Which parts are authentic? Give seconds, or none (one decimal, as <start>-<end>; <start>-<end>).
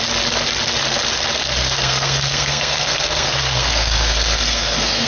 0.0-1.6